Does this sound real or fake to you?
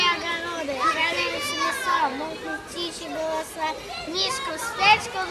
real